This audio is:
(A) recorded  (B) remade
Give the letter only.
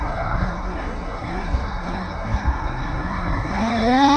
B